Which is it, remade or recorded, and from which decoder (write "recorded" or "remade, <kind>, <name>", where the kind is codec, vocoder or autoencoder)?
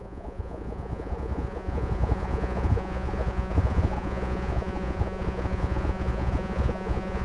remade, vocoder, Vocos